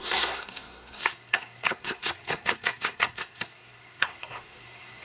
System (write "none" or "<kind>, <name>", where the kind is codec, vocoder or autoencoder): codec, SNAC